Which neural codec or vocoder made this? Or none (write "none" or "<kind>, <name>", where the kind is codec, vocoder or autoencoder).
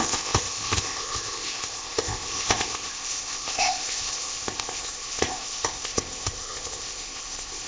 codec, ZipCodec